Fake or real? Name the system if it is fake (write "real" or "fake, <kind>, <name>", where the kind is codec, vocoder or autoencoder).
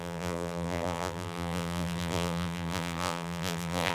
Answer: fake, vocoder, BigVGAN v2